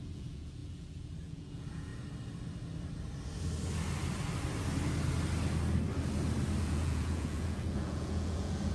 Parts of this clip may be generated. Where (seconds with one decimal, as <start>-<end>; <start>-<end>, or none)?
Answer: 0.0-1.9; 6.6-8.7